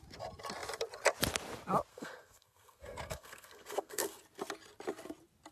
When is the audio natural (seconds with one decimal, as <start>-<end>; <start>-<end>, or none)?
0.0-1.9; 4.2-5.5